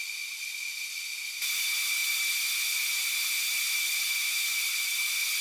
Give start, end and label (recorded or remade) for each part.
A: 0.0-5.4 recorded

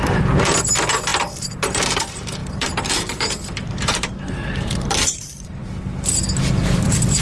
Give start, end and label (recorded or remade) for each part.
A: 0.0-5.6 remade; 5.6-6.5 recorded; 6.5-7.2 remade

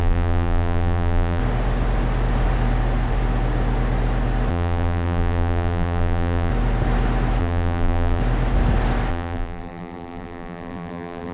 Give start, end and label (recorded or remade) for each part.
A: 0.0-1.4 remade; 1.4-4.5 recorded; 4.5-6.5 remade; 6.5-7.4 recorded; 7.4-8.2 remade; 8.2-9.1 recorded; 9.1-11.3 remade

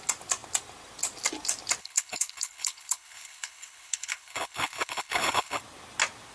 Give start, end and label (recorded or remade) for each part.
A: 0.0-1.8 recorded; 1.8-5.6 remade; 5.6-6.3 recorded

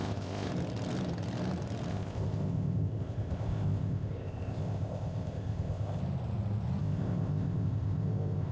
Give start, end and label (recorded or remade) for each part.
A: 0.0-0.5 remade; 0.5-1.9 recorded; 1.9-6.0 remade; 6.0-6.8 recorded; 6.8-8.5 remade

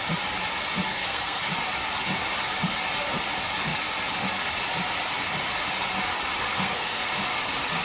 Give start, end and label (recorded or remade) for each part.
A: 0.0-0.9 recorded; 0.9-1.5 remade; 1.5-6.5 recorded; 6.5-7.1 remade; 7.1-7.8 recorded

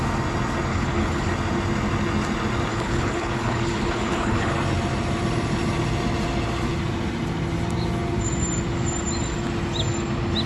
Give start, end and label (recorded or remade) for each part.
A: 0.0-0.7 recorded; 0.7-1.3 remade; 1.3-2.7 recorded; 2.7-4.5 remade; 4.5-10.5 recorded